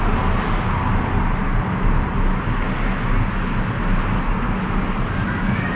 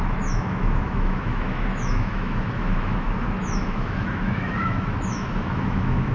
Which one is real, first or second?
first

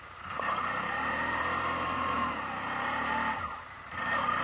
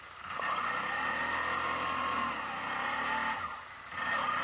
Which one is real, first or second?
second